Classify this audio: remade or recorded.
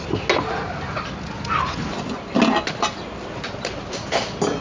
recorded